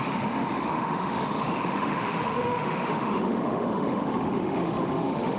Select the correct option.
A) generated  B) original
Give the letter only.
A